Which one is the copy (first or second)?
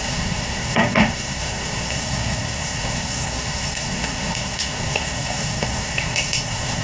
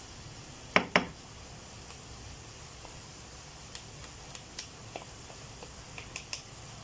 first